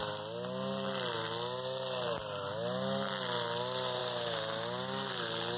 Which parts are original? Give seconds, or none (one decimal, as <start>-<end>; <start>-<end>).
0.0-5.6